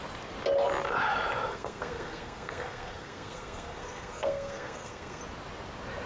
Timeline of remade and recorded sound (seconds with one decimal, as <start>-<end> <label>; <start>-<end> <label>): 0.0-1.5 recorded; 1.5-5.2 remade; 5.2-6.1 recorded